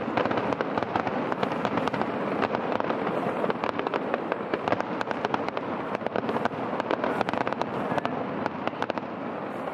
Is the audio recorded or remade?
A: recorded